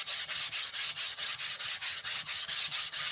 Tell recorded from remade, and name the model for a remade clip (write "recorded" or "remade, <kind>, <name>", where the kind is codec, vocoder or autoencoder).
remade, vocoder, HiFi-GAN